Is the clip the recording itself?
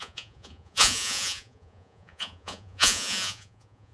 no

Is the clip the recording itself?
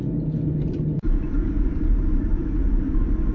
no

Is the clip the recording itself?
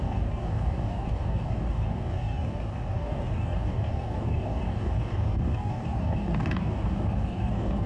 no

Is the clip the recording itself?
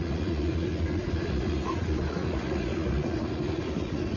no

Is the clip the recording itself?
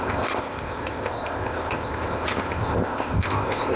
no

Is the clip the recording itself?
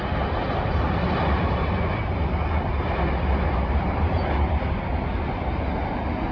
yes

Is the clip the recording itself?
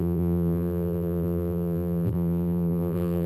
no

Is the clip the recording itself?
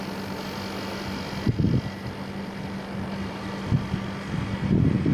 yes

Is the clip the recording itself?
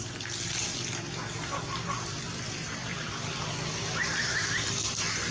yes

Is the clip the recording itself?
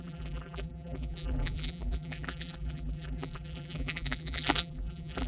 no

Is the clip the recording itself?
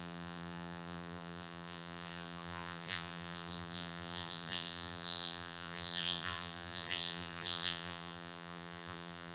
no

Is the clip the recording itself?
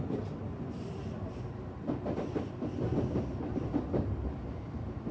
yes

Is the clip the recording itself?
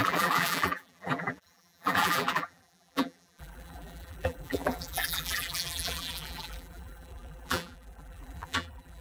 no